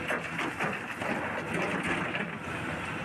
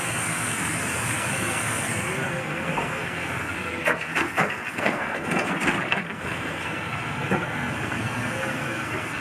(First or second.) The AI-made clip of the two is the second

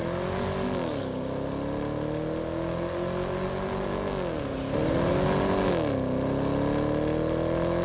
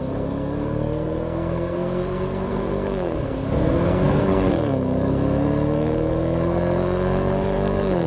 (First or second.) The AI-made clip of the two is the second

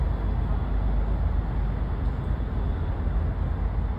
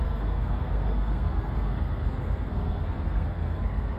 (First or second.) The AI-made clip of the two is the second